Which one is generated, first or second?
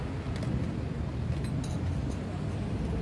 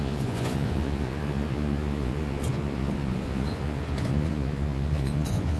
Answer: second